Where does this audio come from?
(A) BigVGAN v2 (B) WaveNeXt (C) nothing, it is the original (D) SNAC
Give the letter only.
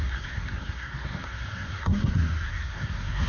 D